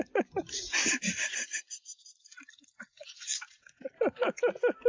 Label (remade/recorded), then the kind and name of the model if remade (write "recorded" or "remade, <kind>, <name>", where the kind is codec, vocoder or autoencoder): recorded